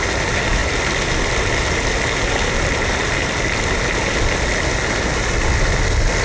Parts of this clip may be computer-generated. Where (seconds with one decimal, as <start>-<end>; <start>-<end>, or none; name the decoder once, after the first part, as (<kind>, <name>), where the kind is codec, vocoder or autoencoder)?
none